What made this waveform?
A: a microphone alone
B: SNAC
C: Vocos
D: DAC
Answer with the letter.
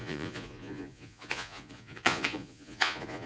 C